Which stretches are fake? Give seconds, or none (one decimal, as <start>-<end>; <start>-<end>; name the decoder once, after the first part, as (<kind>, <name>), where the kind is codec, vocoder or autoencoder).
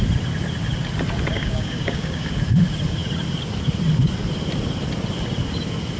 1.3-2.3 (codec, DAC)